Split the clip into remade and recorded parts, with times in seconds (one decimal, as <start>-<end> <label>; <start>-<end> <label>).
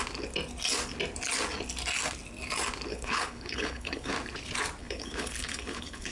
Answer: 0.0-2.9 recorded; 2.9-4.1 remade; 4.1-4.8 recorded; 4.8-6.1 remade